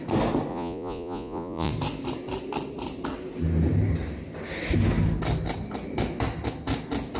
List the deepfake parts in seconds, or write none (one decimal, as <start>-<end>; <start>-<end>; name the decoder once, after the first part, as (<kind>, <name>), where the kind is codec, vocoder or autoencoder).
0.5-1.7 (vocoder, Vocos)